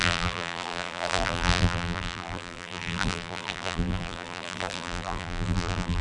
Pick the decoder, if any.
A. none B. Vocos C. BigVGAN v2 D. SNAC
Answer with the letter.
C